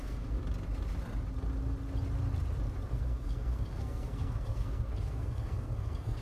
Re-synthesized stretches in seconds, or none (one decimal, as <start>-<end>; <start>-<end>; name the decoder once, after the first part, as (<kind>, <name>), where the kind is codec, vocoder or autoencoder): 0.0-0.4 (codec, SNAC); 2.9-6.2